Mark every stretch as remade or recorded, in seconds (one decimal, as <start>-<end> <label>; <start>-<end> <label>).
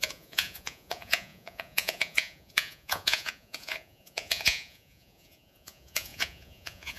0.0-7.0 remade